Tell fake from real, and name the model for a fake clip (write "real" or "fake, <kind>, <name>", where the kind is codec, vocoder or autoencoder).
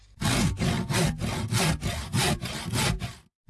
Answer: real